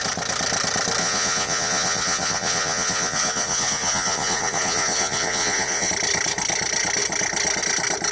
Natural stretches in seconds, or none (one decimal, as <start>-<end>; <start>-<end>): 0.0-1.0; 5.9-8.1